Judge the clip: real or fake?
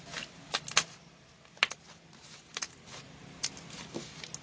real